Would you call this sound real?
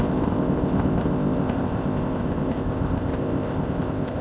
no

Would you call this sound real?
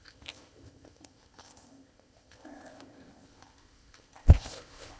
no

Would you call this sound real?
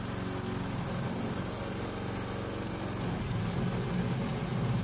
yes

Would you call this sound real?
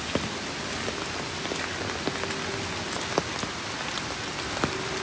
yes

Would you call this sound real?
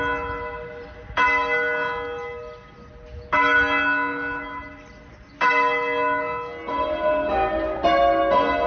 yes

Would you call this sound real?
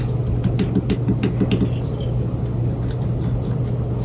yes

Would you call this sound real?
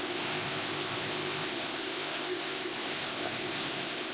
no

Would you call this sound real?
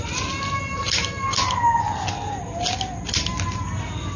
yes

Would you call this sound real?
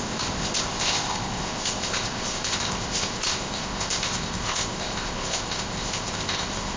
no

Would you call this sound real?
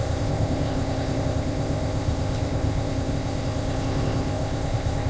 no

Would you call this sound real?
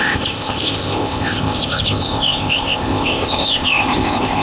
no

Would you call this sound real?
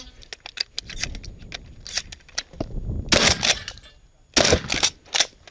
yes